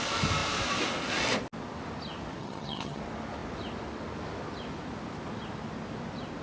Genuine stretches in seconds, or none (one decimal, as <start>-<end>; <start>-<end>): 0.0-2.4; 3.0-6.4